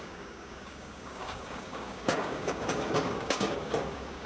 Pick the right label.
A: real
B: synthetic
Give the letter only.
B